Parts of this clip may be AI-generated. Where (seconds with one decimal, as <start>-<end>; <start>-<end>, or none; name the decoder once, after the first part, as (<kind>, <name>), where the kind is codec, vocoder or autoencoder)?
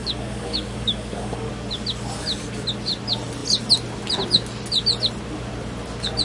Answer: 0.0-1.5 (codec, DAC)